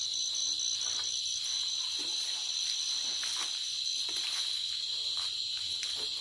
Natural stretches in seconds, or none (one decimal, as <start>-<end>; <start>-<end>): 0.0-6.2

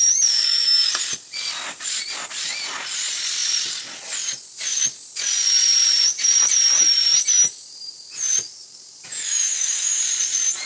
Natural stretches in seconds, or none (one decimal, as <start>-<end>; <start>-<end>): 0.0-0.4; 0.9-9.1; 10.0-10.7

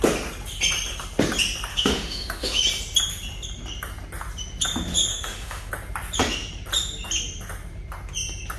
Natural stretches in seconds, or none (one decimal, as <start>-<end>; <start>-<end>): 0.0-1.7; 2.6-5.1; 5.7-8.6

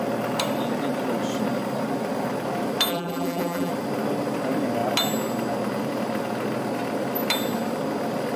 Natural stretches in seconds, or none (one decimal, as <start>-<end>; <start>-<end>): 0.0-2.9; 3.7-8.4

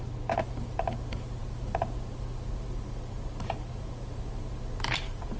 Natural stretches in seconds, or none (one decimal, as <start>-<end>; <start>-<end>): none

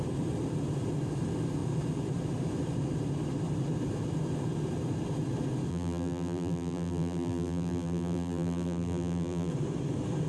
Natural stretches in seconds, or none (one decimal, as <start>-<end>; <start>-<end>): 0.0-5.7; 9.5-10.3

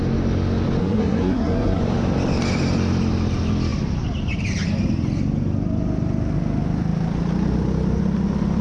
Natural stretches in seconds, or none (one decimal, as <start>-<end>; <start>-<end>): 0.0-0.8; 1.8-8.6